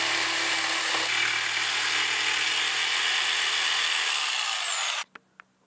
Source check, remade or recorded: recorded